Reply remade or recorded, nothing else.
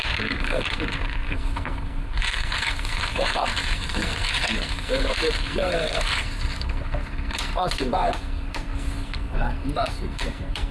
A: remade